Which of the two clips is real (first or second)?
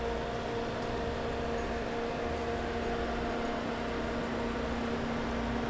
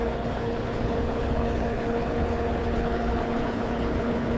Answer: first